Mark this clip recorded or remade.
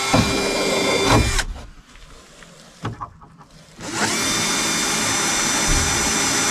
recorded